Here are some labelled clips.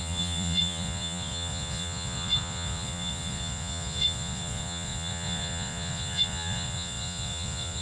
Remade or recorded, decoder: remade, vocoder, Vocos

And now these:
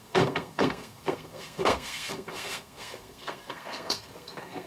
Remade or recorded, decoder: remade, codec, SNAC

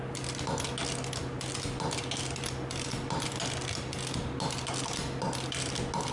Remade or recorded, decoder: recorded